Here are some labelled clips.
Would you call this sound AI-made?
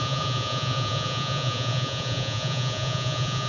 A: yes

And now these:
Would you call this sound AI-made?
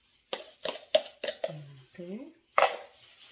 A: no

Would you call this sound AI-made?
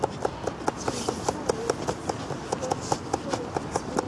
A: no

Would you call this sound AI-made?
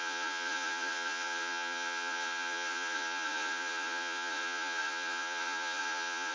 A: yes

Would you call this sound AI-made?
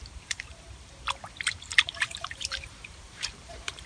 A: yes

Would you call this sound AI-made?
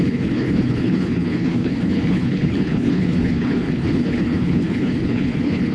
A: yes